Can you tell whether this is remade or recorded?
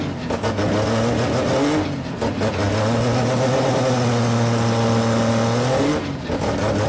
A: recorded